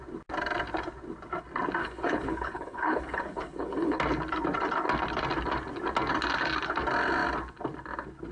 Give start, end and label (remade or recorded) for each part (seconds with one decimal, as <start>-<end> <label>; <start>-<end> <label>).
0.0-1.8 recorded; 1.8-4.0 remade; 4.0-8.3 recorded